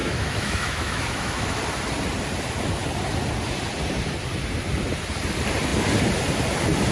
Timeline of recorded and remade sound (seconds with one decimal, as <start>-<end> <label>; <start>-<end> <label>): 0.0-1.6 remade; 1.6-6.9 recorded